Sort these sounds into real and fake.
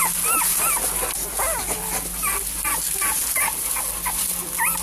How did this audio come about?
real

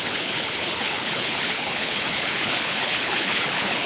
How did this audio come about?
fake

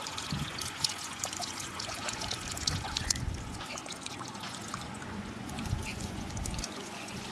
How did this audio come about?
fake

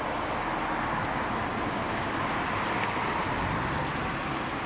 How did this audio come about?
real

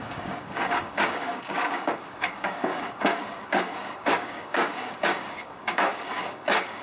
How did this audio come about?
fake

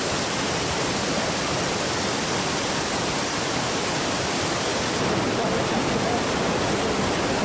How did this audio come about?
real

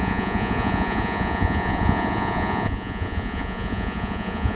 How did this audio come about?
fake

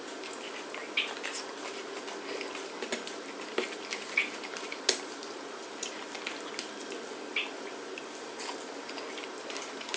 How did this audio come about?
real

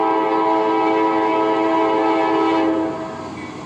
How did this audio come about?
real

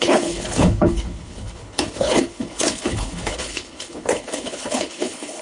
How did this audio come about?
fake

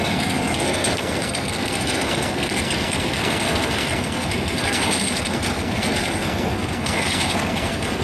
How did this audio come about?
fake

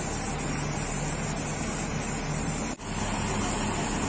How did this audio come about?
real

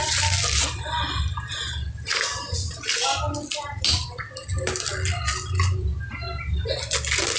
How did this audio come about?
real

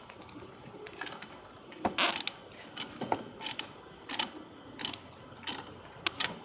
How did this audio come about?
real